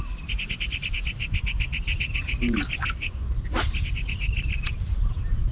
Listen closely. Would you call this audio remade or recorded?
recorded